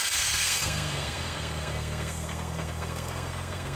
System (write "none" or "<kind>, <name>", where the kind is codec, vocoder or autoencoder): codec, SNAC